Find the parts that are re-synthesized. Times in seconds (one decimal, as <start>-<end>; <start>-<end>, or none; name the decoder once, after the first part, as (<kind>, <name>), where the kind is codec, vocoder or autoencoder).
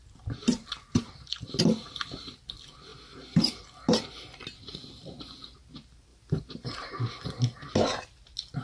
0.4-1.6 (vocoder, BigVGAN v2); 6.1-7.0